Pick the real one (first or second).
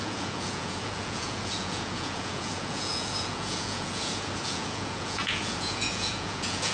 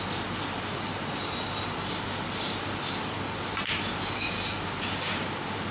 second